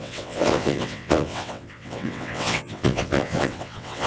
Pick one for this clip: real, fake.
fake